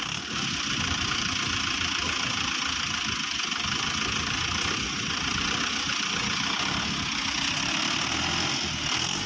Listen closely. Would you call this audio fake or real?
real